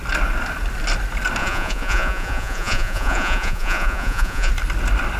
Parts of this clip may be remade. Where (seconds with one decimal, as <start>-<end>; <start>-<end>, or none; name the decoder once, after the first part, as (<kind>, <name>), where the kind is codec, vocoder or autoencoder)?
1.4-4.5 (vocoder, Vocos)